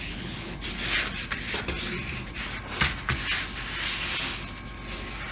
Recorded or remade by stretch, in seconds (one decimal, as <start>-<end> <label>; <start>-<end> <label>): 0.0-0.6 remade; 0.6-5.3 recorded